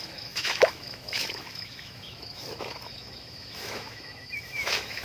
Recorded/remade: remade